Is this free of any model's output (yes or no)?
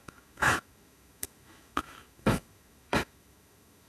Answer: no